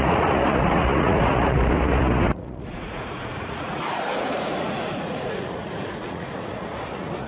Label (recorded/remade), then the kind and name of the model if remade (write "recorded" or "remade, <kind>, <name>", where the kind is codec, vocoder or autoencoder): remade, vocoder, Vocos